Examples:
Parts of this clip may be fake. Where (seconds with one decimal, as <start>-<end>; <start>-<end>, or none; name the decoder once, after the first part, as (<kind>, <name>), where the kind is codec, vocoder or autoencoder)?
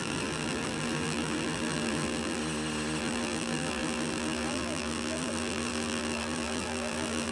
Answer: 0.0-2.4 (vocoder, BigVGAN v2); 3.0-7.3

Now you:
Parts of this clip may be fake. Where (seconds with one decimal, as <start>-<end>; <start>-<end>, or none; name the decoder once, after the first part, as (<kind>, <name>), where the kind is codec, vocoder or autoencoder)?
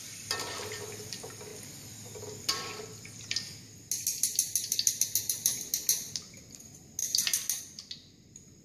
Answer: none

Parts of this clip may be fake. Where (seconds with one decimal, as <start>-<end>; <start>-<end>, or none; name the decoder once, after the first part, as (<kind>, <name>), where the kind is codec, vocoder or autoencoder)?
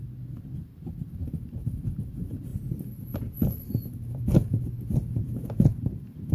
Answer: 0.0-6.3 (vocoder, BigVGAN v2)